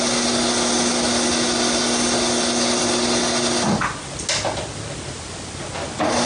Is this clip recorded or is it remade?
recorded